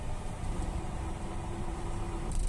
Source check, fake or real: fake